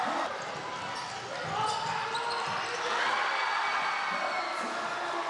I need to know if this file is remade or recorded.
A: recorded